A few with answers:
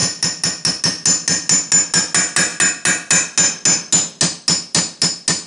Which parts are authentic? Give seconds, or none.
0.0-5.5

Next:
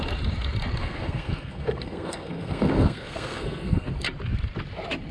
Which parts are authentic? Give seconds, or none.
0.0-0.8; 3.9-5.1

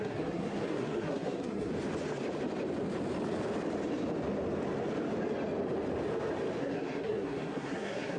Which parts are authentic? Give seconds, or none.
1.7-6.6